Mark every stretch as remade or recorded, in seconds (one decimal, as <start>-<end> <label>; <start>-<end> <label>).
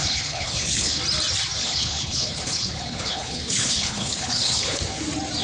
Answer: 0.0-1.0 remade; 1.0-1.6 recorded; 1.6-4.8 remade; 4.8-5.4 recorded